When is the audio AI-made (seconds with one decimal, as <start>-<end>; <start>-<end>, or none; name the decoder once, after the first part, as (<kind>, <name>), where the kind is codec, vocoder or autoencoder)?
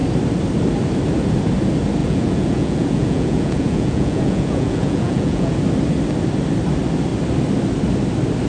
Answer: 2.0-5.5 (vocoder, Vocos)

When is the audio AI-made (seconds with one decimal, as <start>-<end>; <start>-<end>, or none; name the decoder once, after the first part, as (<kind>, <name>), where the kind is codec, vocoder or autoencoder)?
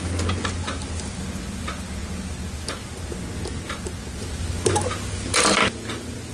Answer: none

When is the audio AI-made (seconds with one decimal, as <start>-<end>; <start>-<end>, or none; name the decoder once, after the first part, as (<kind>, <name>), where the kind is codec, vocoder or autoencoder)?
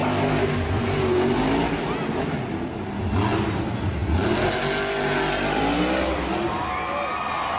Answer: none